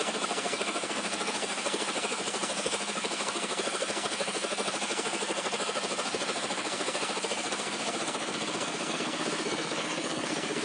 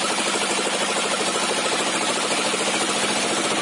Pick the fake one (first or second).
first